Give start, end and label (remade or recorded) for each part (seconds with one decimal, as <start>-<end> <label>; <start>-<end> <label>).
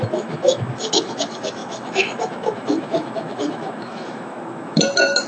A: 0.0-5.3 remade